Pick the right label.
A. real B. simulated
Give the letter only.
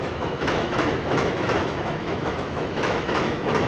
B